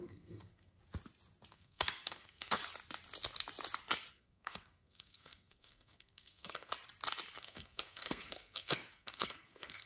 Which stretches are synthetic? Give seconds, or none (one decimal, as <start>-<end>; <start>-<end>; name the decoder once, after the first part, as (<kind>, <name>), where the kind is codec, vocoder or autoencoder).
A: 0.0-0.8 (codec, SNAC); 1.5-2.6; 4.1-6.7; 7.4-9.9